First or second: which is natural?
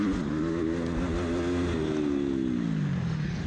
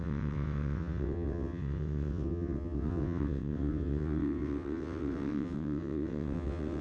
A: first